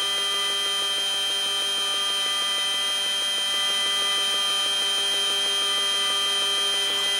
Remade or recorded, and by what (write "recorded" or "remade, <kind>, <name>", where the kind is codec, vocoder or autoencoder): recorded